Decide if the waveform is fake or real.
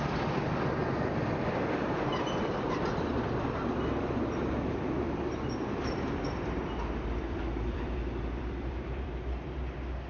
fake